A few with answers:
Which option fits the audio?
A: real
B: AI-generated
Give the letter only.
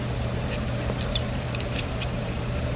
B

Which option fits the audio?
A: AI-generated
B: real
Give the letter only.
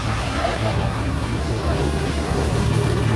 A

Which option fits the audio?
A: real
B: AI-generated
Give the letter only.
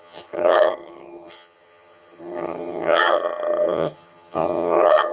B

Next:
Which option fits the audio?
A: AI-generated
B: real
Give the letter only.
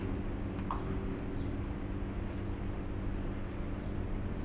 B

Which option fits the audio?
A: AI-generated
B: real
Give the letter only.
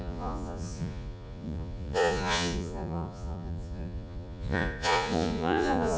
A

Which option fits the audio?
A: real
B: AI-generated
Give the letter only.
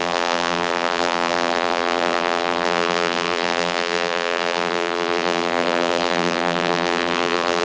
B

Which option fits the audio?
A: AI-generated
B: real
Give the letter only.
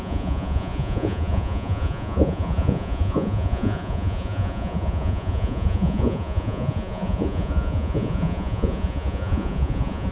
A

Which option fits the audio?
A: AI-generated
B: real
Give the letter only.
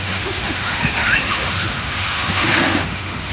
A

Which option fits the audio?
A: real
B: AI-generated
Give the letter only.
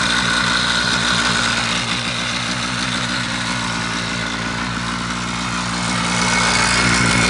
A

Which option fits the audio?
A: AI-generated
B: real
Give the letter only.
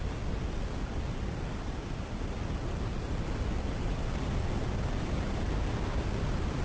B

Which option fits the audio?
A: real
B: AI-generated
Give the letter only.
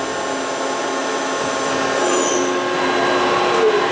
A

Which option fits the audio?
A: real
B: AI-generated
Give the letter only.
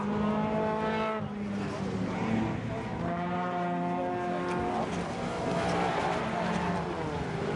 A